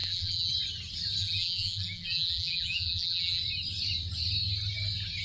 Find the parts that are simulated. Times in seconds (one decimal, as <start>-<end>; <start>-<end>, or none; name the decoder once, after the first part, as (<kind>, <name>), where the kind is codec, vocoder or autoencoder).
0.0-0.5 (vocoder, BigVGAN v2); 1.2-3.4